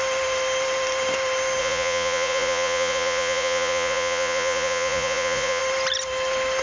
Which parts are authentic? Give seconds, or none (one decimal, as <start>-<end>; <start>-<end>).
0.0-1.6; 5.6-6.6